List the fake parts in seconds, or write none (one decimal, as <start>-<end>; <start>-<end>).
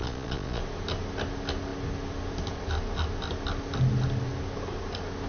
0.0-0.6